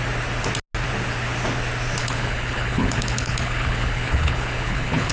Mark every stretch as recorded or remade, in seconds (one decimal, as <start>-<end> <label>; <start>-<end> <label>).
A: 0.0-2.0 recorded; 2.0-5.1 remade